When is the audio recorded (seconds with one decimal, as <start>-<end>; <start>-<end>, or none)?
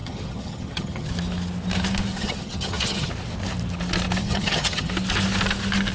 1.1-2.1; 3.1-4.2; 4.9-5.9